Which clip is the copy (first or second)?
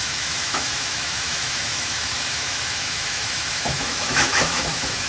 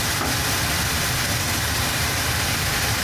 first